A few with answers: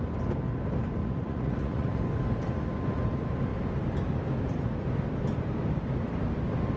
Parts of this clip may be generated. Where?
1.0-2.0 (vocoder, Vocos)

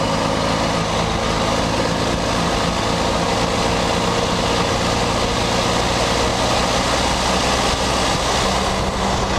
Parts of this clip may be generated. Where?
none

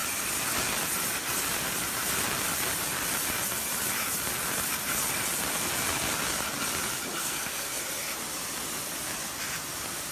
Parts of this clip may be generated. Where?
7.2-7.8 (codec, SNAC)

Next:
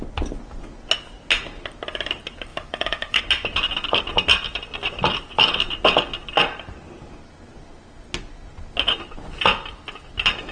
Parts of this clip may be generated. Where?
2.5-3.2 (autoencoder, DAC-VAE)

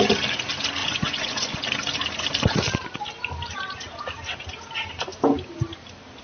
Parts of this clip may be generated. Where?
0.8-1.6 (vocoder, Vocos)